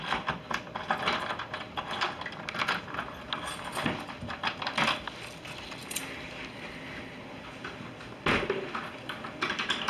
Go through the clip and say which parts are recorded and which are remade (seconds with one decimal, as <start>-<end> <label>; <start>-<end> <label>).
0.0-9.9 recorded